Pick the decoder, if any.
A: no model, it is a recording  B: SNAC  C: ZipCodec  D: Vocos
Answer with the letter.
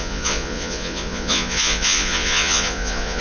D